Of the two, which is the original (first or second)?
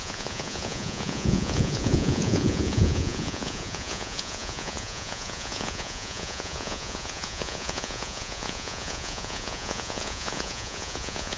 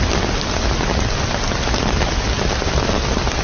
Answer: second